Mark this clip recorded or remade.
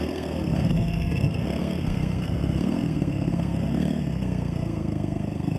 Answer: remade